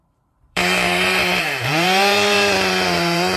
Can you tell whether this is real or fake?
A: fake